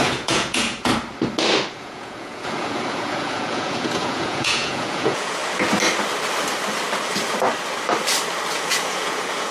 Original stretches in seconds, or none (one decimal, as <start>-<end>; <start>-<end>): 0.9-1.7; 5.4-8.5